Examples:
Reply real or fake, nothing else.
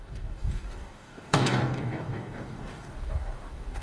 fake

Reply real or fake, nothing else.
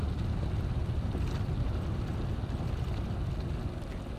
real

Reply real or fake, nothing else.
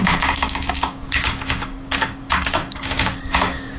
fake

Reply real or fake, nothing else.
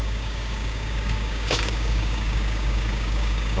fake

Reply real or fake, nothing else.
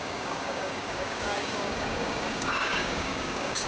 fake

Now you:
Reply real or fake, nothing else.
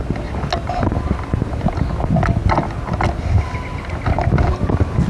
real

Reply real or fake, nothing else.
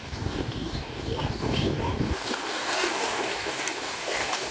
fake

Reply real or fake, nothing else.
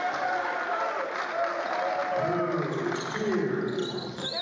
real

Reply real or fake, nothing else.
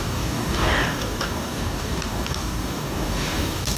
fake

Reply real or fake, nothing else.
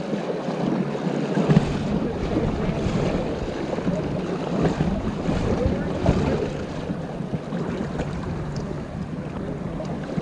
real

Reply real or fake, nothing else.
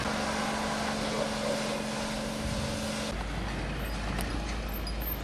real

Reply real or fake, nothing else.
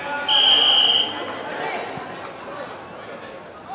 real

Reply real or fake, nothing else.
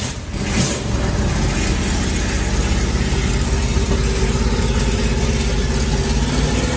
real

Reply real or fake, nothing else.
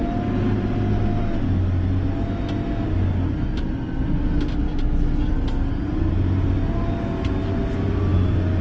real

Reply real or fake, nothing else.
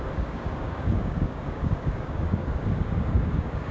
fake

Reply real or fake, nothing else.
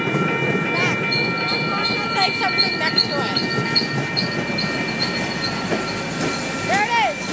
real